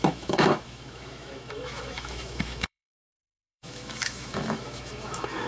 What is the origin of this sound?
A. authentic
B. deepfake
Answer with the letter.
B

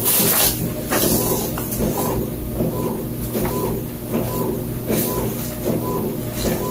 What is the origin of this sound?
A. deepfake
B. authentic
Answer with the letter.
B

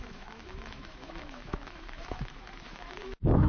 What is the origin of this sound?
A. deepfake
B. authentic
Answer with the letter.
A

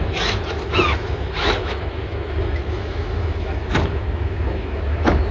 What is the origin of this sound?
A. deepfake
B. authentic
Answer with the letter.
A